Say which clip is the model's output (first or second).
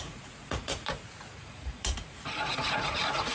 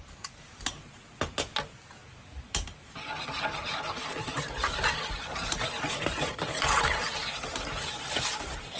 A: first